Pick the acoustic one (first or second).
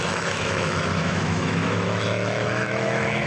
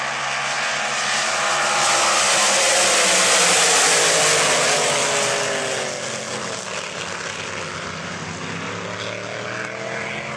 second